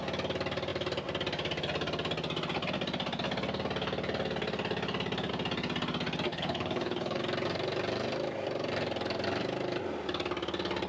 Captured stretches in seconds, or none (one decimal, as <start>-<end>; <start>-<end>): 0.0-6.3; 7.2-10.9

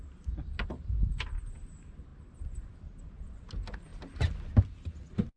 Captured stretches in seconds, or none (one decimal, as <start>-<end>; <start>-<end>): 0.0-5.4

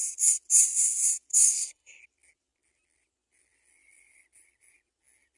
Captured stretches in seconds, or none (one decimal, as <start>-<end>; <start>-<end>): 0.0-1.3; 2.0-5.4

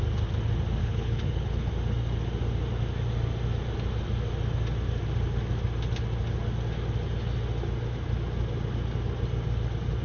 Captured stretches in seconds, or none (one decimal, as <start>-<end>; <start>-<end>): 0.0-0.8; 1.7-10.0

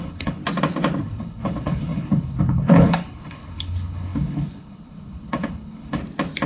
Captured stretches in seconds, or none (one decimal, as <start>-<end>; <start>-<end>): 0.4-1.0; 6.0-6.5

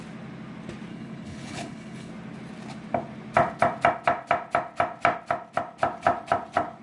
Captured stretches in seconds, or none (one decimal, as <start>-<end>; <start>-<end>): 0.0-0.9; 2.1-6.8

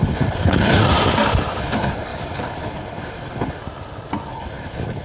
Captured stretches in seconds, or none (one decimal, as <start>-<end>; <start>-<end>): 0.8-1.6; 3.6-4.3

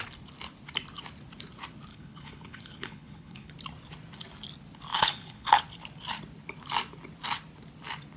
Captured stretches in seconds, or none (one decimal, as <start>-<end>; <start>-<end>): 0.0-1.9; 3.5-4.9; 5.6-8.2